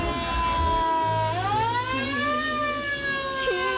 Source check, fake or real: real